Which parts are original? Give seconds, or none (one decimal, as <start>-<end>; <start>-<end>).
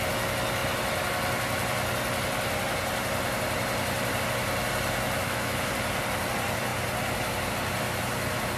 0.0-5.2; 5.7-8.6